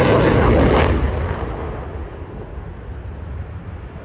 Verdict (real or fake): real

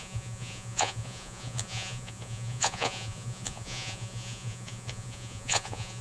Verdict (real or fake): fake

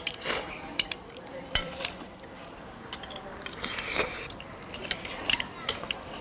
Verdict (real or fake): fake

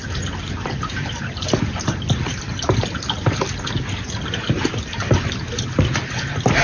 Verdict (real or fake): real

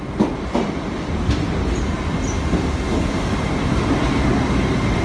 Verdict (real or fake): real